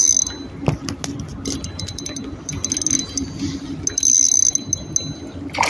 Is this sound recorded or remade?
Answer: recorded